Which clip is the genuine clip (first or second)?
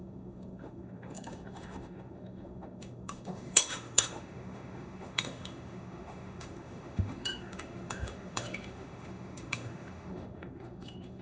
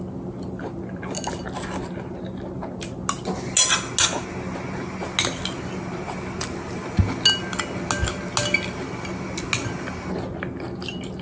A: second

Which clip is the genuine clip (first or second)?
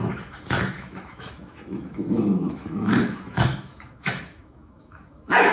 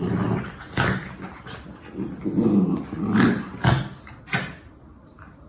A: second